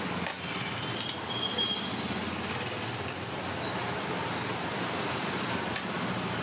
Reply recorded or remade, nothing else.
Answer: recorded